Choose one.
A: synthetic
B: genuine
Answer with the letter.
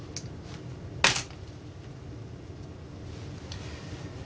B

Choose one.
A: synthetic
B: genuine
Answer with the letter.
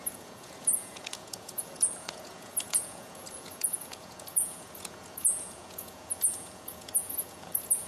A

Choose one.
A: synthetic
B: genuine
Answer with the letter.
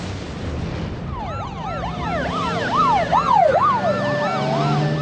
B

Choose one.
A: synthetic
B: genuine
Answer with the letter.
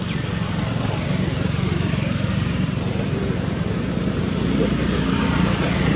A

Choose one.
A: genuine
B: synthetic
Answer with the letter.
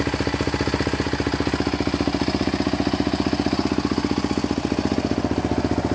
A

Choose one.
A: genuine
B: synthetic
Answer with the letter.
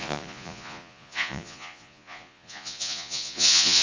B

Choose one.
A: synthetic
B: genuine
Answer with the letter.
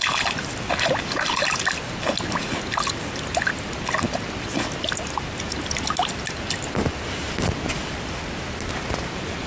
B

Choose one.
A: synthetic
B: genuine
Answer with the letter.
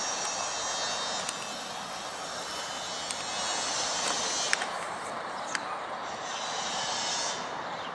B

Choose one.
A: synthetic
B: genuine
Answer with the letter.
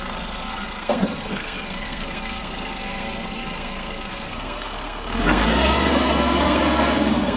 A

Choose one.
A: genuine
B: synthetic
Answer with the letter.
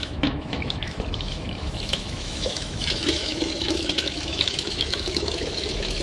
B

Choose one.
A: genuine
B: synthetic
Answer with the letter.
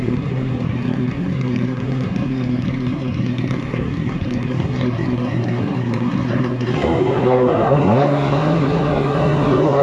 B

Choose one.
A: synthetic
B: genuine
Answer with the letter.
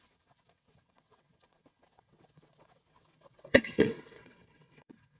A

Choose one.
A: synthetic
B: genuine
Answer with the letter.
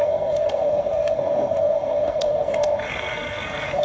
A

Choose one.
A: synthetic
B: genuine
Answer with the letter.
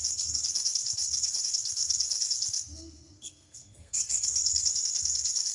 A